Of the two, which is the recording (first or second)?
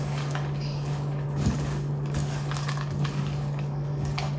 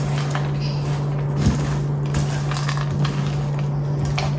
second